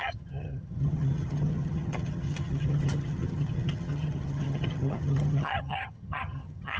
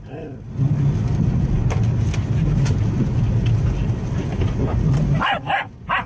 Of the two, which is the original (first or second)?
second